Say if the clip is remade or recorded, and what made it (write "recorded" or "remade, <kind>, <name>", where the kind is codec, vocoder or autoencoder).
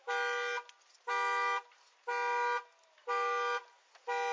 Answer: recorded